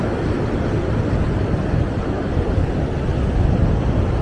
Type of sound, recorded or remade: recorded